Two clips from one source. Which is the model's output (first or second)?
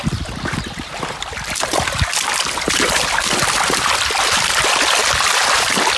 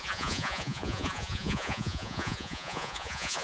second